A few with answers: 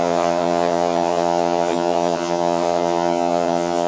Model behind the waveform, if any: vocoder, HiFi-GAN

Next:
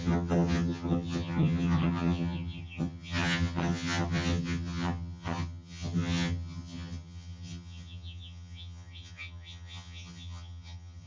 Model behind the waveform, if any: vocoder, HiFi-GAN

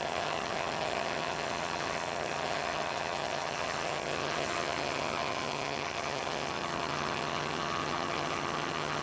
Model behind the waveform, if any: vocoder, HiFi-GAN